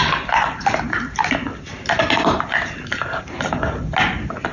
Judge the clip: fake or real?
real